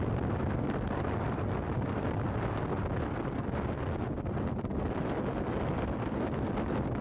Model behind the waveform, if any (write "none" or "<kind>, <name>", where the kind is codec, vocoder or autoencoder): none